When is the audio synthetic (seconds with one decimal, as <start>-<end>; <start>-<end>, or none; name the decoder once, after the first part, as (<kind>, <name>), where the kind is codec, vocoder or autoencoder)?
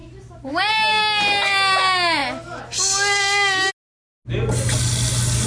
none